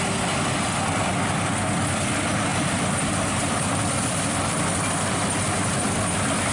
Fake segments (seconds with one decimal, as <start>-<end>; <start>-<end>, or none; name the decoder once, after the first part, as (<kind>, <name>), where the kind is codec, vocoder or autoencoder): 2.5-6.5 (vocoder, BigVGAN v2)